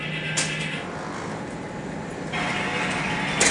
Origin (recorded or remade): recorded